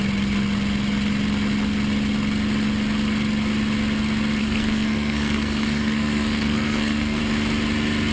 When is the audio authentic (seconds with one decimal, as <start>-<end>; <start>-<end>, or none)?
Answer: 0.0-4.4; 7.2-8.1